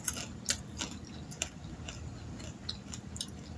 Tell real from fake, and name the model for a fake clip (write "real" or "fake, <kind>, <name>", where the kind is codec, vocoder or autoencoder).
real